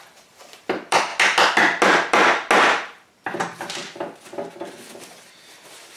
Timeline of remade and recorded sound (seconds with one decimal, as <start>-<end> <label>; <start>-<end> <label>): 0.0-1.1 remade; 1.1-3.1 recorded; 3.1-3.8 remade; 3.8-4.9 recorded; 4.9-6.0 remade